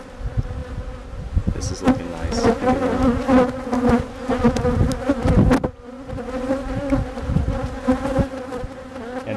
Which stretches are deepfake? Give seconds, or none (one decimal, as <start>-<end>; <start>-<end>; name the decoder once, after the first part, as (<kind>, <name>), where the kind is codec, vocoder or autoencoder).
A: none